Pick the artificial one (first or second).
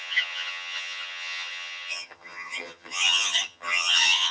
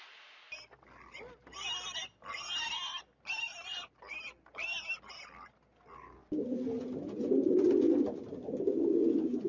first